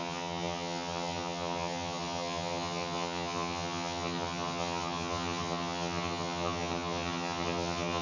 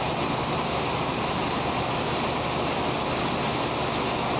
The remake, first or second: first